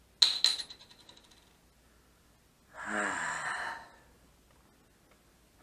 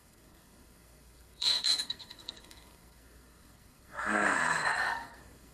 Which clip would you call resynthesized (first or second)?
second